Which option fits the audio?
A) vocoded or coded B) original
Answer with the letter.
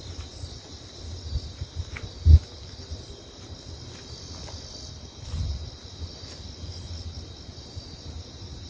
B